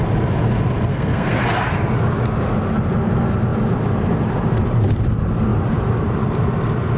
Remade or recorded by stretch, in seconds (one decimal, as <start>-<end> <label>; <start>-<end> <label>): 0.0-0.9 recorded; 0.9-1.4 remade; 1.4-7.0 recorded